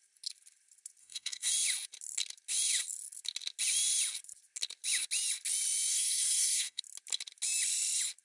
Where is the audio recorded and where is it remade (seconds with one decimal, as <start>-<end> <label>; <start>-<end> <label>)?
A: 0.0-1.0 recorded; 1.0-1.5 remade; 1.5-5.9 recorded; 5.9-6.8 remade; 6.8-8.2 recorded

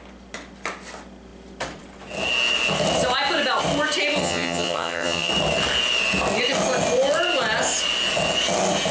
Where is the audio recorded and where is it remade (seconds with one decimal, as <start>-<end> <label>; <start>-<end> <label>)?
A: 0.0-4.2 recorded; 4.2-5.3 remade; 5.3-8.9 recorded